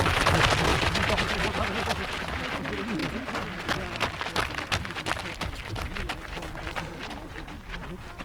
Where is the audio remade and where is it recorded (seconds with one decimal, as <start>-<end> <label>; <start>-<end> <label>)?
0.0-0.7 recorded; 0.7-1.6 remade; 1.6-8.2 recorded